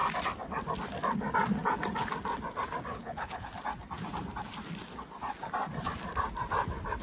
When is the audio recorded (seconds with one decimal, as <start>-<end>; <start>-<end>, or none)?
0.0-2.9; 3.5-7.0